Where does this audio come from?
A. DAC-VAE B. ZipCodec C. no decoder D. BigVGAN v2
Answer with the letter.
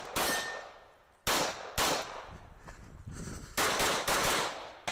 C